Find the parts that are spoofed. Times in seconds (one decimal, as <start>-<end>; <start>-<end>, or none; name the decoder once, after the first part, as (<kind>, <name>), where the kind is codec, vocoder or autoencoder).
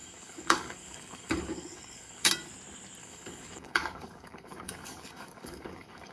0.0-2.3 (codec, DAC); 3.0-6.1